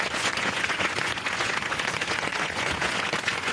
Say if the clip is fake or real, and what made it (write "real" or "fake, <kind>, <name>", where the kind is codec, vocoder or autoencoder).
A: fake, vocoder, Vocos